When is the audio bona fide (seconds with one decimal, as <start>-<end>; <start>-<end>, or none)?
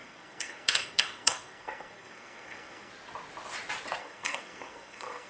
2.9-4.0